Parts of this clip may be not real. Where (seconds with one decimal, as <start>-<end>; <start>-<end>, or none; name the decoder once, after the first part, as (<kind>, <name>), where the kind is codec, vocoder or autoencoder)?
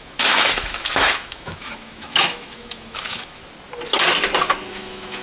0.0-3.4 (autoencoder, DAC-VAE); 4.7-5.2